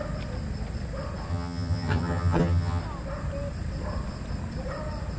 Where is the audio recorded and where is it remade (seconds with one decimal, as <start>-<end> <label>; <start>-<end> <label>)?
0.0-1.3 recorded; 1.3-2.8 remade; 2.8-5.2 recorded